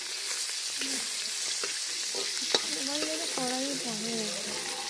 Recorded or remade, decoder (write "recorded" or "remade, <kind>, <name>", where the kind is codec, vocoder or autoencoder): recorded